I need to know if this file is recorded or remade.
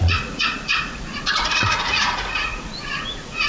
remade